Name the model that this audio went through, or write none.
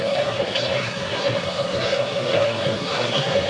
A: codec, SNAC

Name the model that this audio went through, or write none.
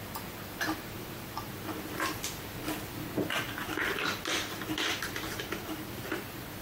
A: none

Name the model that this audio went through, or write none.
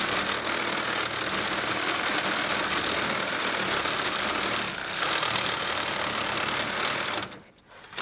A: none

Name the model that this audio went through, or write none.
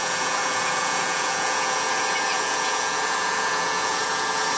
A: vocoder, Vocos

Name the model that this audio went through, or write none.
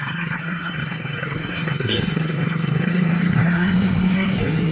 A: codec, SNAC